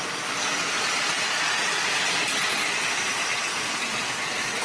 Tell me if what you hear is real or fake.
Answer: real